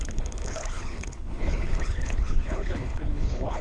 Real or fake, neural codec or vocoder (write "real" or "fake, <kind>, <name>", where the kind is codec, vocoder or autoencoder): fake, codec, HILCodec